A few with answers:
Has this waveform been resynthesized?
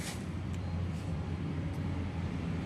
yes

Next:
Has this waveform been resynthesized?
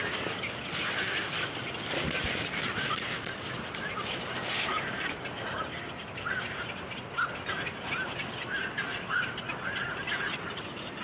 no